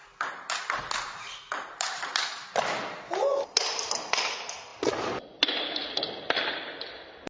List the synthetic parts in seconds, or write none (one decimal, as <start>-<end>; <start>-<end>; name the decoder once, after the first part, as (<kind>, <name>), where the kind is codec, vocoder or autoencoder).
none